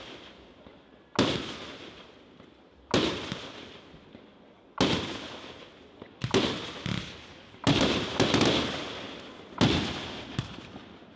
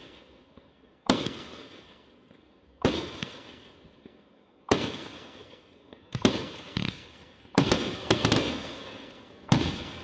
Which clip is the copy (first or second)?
second